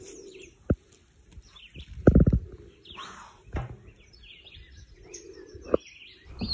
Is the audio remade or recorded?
recorded